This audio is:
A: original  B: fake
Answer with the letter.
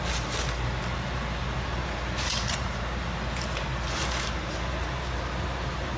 B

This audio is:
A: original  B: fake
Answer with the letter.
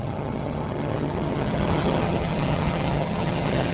B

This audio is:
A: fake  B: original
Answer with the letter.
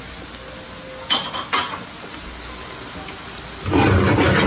B